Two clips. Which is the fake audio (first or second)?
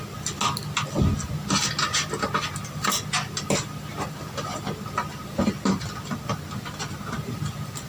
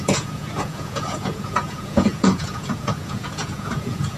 second